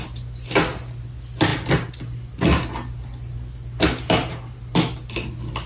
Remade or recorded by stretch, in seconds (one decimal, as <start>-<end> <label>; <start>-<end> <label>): 0.0-5.7 recorded

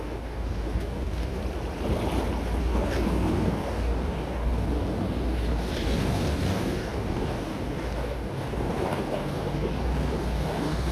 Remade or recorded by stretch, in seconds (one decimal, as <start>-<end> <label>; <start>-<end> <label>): 0.0-1.4 remade; 1.4-2.6 recorded; 2.6-10.9 remade

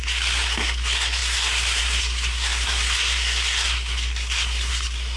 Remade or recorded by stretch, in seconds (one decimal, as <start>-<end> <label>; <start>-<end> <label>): 0.0-5.2 remade

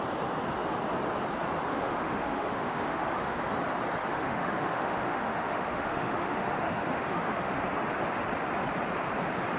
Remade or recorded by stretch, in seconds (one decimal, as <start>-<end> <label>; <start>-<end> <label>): 0.0-1.7 recorded; 1.7-3.4 remade; 3.4-4.1 recorded; 4.1-7.6 remade; 7.6-9.6 recorded

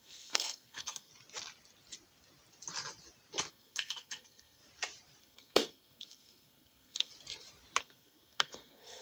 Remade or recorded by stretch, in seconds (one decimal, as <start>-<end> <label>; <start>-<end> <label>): 0.0-1.1 remade; 1.1-3.5 recorded; 3.5-4.6 remade; 4.6-5.2 recorded; 5.2-7.1 remade; 7.1-7.8 recorded; 7.8-9.0 remade

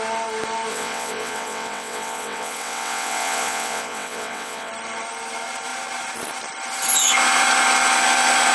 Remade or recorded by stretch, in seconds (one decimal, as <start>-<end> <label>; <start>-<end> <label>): 0.0-0.7 recorded; 0.7-4.7 remade; 4.7-8.5 recorded

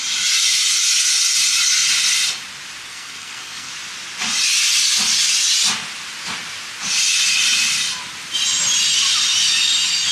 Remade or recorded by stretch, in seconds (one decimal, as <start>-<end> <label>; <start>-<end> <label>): 0.0-2.9 recorded; 2.9-3.7 remade; 3.7-10.1 recorded

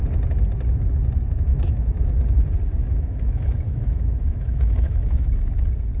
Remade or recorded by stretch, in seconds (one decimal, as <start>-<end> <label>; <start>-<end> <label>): 0.0-1.5 recorded; 1.5-2.1 remade; 2.1-2.8 recorded; 2.8-5.5 remade; 5.5-6.0 recorded